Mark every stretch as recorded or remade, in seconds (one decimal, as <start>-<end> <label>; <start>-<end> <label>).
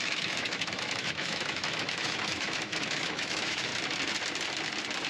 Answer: 0.0-3.7 remade; 3.7-5.1 recorded